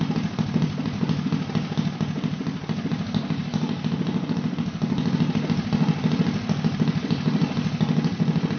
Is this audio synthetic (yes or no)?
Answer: no